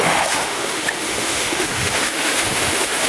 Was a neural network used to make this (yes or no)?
yes